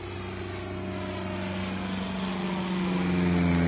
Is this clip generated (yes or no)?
no